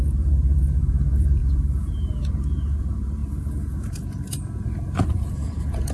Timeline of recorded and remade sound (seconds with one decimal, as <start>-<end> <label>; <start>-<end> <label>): 0.0-5.9 remade